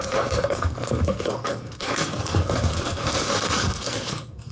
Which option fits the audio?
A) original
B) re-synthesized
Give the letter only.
B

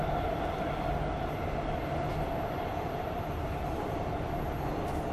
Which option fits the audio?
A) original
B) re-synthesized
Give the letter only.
A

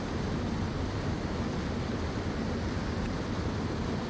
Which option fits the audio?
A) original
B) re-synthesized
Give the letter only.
A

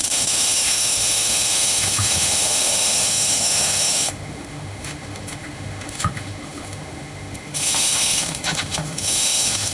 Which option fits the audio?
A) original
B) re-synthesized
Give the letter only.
B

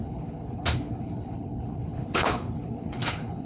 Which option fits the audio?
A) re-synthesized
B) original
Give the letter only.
A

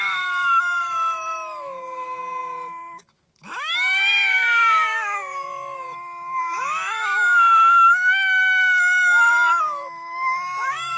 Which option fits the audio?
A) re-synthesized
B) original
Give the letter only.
A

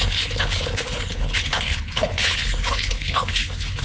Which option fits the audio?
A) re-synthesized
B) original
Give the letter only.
A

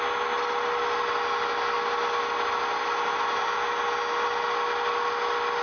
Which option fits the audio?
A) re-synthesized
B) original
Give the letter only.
B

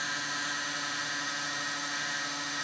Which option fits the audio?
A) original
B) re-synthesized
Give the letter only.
B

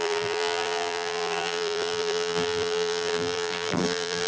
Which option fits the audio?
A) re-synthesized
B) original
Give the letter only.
A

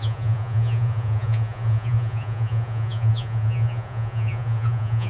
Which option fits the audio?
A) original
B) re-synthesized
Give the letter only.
B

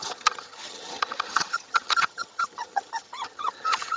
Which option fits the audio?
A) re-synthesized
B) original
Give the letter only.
A